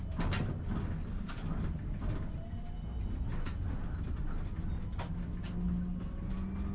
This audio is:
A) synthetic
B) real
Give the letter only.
B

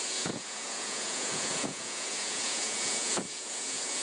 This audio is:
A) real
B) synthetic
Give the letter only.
B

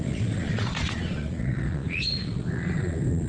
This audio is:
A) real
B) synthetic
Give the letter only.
B